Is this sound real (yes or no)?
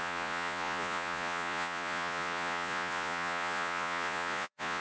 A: no